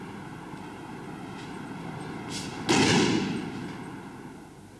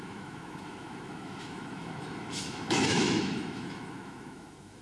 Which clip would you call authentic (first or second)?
first